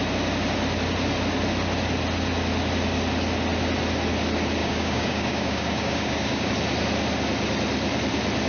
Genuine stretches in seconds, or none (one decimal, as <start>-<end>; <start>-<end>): 0.0-4.6; 6.5-8.5